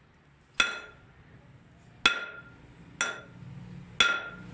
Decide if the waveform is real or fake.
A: real